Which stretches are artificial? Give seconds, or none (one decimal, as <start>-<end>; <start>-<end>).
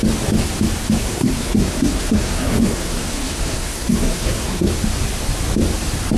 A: 1.0-4.7